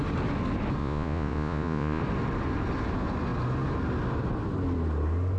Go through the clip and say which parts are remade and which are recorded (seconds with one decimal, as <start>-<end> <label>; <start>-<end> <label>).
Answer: 0.0-0.8 recorded; 0.8-2.0 remade; 2.0-5.4 recorded